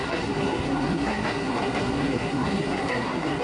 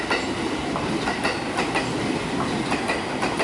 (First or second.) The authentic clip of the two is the second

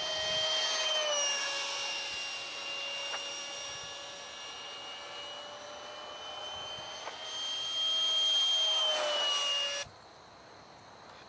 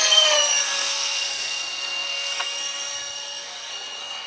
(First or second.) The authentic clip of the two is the first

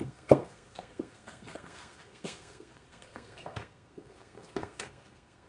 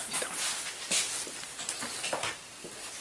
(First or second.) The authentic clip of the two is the second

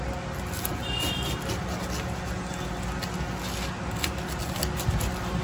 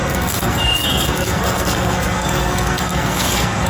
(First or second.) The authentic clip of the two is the first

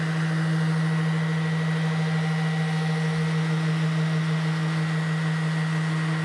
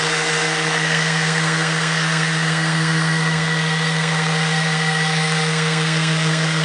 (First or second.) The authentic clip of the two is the first